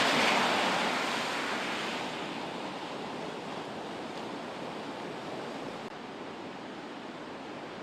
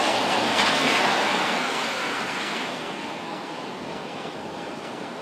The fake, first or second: second